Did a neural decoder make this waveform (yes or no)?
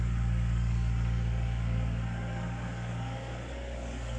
yes